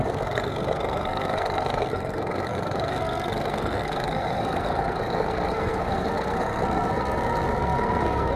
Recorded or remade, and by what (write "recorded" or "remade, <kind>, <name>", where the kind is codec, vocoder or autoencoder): remade, codec, SNAC